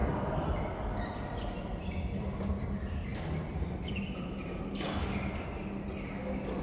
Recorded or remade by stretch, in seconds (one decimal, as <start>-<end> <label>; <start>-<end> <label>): 0.0-1.9 remade; 1.9-3.1 recorded; 3.1-3.9 remade; 3.9-6.6 recorded